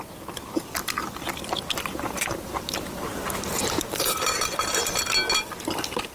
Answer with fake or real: real